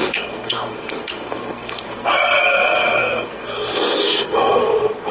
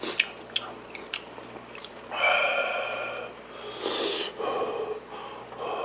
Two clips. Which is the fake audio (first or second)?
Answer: first